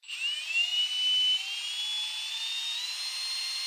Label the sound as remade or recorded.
recorded